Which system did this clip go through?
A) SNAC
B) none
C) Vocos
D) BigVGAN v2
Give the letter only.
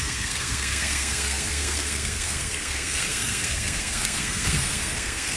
A